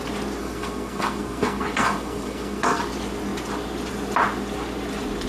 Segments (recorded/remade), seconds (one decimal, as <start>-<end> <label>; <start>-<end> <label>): 0.0-0.4 recorded; 0.4-2.8 remade; 2.8-5.3 recorded

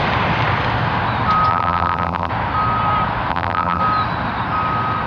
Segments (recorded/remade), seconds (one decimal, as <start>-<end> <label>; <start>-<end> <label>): 0.0-1.5 recorded; 1.5-2.3 remade; 2.3-3.3 recorded; 3.3-3.8 remade; 3.8-5.1 recorded

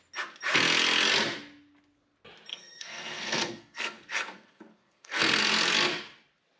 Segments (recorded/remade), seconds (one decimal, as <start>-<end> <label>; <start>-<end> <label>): 0.0-2.5 recorded; 2.5-5.4 remade; 5.4-6.6 recorded